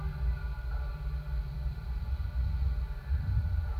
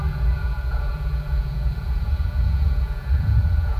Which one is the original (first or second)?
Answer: first